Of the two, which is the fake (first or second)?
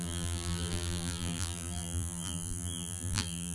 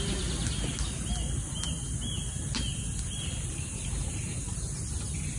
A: first